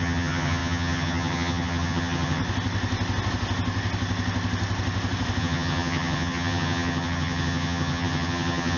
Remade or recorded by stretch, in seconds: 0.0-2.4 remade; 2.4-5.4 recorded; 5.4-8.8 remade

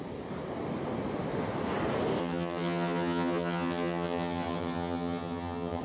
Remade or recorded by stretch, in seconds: 0.0-2.2 recorded; 2.2-5.8 remade

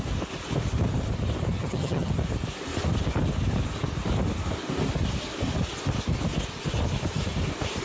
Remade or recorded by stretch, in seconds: 0.0-1.6 recorded; 1.6-2.1 remade; 2.1-7.8 recorded

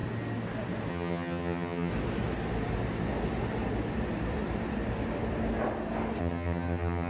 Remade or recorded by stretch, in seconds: 0.0-0.9 recorded; 0.9-1.9 remade; 1.9-6.2 recorded; 6.2-7.1 remade

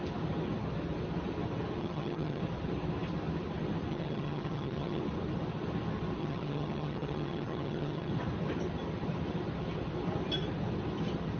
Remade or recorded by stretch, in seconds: 0.0-1.8 recorded; 1.8-2.4 remade; 2.4-3.9 recorded; 3.9-5.0 remade; 5.0-6.2 recorded; 6.2-8.1 remade; 8.1-11.4 recorded

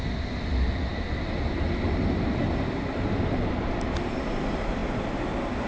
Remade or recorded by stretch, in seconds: 0.0-5.7 recorded

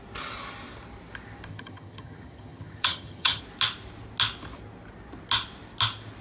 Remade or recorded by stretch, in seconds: 0.0-1.5 recorded; 1.5-3.4 remade; 3.4-6.2 recorded

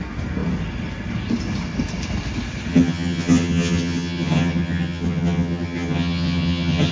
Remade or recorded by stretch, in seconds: 0.0-2.7 recorded; 2.7-6.9 remade